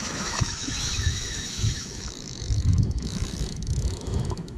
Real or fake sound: fake